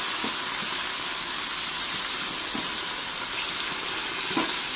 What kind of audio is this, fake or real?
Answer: real